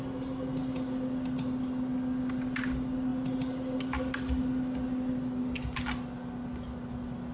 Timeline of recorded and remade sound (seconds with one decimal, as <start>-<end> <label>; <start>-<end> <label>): 0.0-7.3 recorded